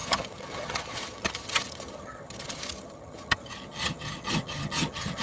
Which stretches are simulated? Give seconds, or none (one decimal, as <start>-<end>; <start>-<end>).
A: 0.0-5.2